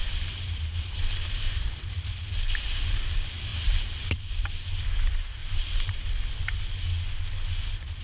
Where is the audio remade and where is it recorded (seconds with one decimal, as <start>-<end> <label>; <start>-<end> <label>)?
0.0-1.9 remade; 1.9-3.5 recorded; 3.5-4.3 remade; 4.3-5.4 recorded; 5.4-6.1 remade; 6.1-8.0 recorded